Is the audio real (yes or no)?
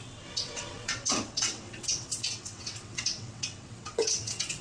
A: no